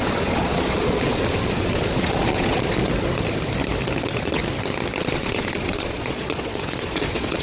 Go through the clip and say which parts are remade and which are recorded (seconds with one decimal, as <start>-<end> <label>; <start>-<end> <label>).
0.0-2.8 remade; 2.8-4.0 recorded; 4.0-4.4 remade; 4.4-5.0 recorded; 5.0-7.4 remade